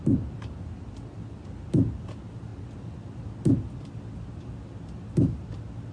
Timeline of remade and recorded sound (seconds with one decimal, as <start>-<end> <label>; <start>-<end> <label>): 0.0-5.9 recorded